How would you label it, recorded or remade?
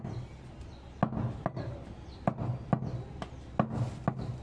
recorded